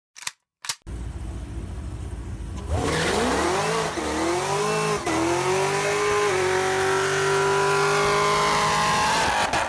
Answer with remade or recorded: recorded